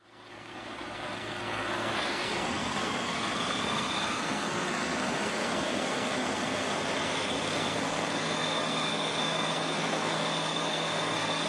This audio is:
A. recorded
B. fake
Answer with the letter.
B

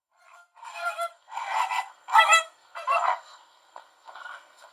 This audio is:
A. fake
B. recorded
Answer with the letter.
A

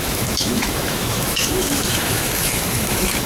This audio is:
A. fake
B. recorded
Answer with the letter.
A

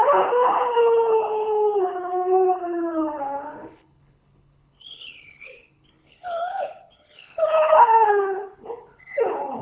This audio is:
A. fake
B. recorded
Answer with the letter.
A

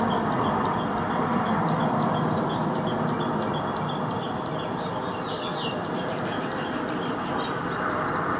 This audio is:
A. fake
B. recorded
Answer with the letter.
B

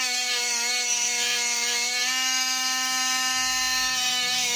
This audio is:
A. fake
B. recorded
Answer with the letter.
A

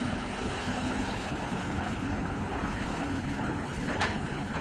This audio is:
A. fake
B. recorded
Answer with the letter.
A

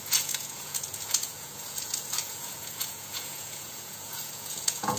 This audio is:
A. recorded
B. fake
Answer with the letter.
B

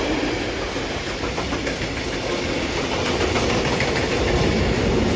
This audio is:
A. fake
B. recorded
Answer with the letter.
B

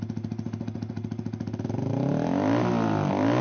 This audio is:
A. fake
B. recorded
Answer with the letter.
B